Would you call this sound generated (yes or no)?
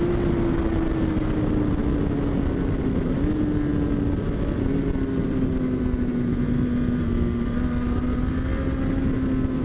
no